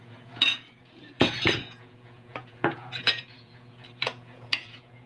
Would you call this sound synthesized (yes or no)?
yes